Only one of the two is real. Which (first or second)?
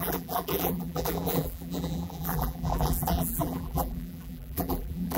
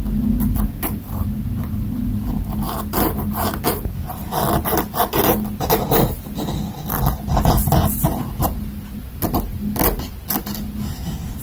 second